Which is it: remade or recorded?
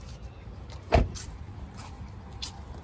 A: recorded